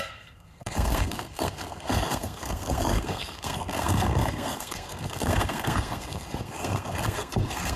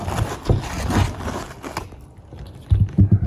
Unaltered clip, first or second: second